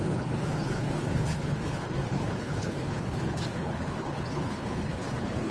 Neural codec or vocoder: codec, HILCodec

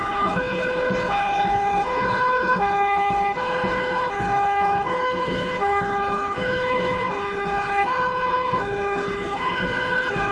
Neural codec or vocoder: codec, HILCodec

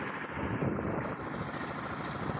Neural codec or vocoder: none